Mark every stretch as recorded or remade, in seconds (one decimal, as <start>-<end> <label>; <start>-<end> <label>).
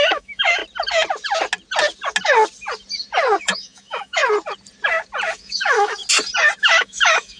0.0-0.6 remade; 0.6-3.4 recorded; 3.4-4.2 remade; 4.2-5.3 recorded; 5.3-6.0 remade; 6.0-6.6 recorded; 6.6-7.4 remade